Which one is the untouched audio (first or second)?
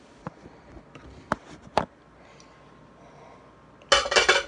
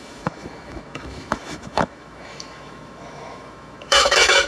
first